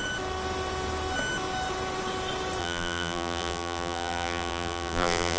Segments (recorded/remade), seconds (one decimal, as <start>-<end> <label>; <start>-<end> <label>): 0.0-2.6 recorded; 2.6-5.4 remade